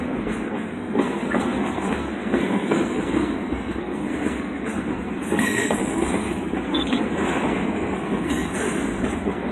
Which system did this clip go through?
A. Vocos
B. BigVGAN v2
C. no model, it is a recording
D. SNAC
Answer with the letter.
D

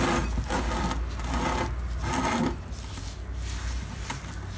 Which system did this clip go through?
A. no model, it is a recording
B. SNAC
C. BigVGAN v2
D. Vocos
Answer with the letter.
A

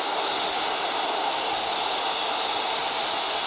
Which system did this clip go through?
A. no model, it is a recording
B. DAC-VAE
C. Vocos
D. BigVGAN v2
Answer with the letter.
A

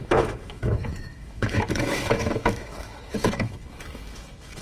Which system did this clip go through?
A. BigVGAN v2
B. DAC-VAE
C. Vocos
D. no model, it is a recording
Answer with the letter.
B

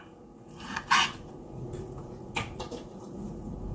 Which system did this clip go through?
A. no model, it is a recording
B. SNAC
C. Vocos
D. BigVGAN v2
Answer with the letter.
C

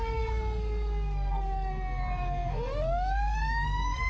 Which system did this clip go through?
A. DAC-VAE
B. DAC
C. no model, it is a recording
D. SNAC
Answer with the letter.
D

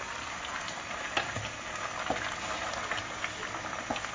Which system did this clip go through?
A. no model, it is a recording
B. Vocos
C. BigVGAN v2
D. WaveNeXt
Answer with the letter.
A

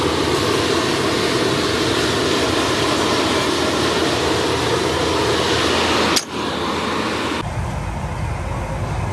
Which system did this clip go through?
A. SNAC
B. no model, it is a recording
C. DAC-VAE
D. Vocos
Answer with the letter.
B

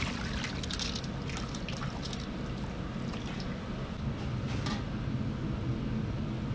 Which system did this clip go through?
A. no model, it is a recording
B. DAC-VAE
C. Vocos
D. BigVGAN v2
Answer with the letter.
A